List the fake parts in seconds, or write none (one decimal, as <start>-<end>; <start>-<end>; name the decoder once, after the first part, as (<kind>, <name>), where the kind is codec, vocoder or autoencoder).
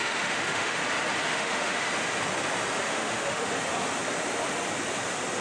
0.0-0.8 (autoencoder, DAC-VAE); 1.3-1.9; 2.9-3.5